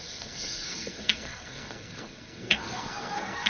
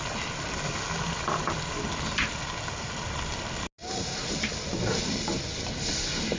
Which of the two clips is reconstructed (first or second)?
first